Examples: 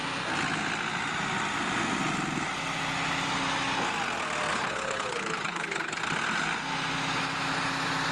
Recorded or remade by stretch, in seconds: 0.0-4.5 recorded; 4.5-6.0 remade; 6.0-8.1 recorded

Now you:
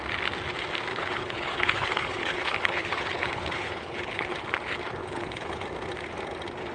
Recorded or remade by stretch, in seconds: 0.0-0.9 recorded; 0.9-4.3 remade; 4.3-5.0 recorded; 5.0-5.6 remade; 5.6-6.7 recorded

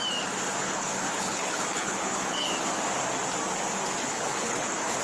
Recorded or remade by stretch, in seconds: 0.0-0.6 recorded; 0.6-2.5 remade; 2.5-4.0 recorded; 4.0-5.0 remade

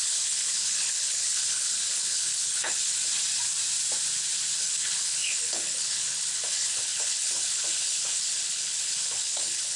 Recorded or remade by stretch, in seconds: 0.0-3.0 remade; 3.0-4.6 recorded; 4.6-9.8 remade

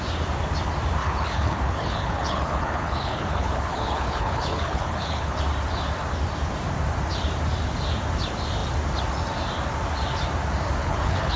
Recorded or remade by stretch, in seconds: 0.0-1.0 recorded; 1.0-5.4 remade; 5.4-10.8 recorded; 10.8-11.4 remade

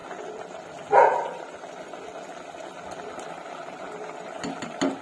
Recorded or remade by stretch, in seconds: 0.0-5.0 recorded